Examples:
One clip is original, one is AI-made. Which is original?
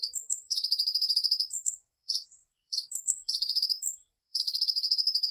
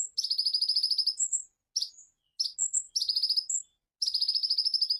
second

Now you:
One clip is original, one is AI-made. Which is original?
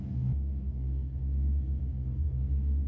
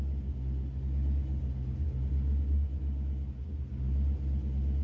second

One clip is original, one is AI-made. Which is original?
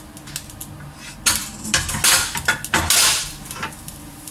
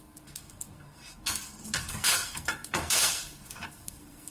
first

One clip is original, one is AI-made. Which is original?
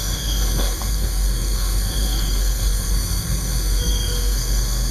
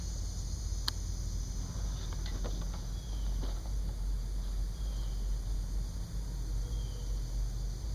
second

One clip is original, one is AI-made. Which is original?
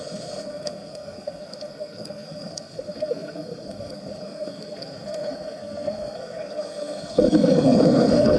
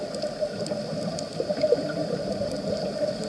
second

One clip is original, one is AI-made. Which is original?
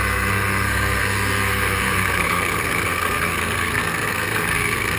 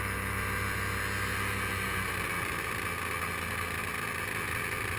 second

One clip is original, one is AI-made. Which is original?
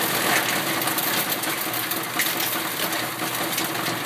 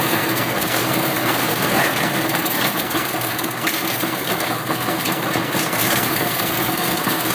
first